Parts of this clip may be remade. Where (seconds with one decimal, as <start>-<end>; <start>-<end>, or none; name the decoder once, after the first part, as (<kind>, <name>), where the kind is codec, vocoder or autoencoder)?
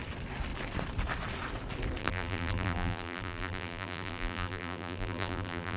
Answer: 2.0-5.8 (vocoder, BigVGAN v2)